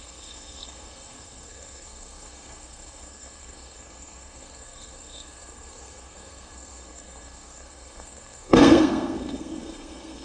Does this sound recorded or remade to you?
remade